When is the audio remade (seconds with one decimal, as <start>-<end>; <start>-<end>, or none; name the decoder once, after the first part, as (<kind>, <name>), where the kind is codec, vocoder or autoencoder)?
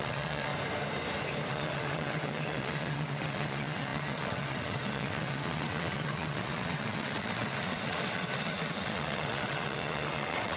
0.0-0.5 (vocoder, WaveNeXt); 1.5-10.6